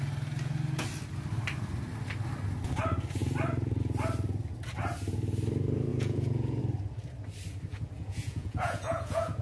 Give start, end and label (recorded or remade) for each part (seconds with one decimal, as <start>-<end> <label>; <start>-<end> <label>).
0.0-5.9 recorded; 5.9-6.6 remade; 6.6-7.7 recorded; 7.7-9.4 remade